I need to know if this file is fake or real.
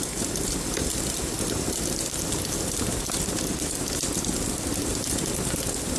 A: real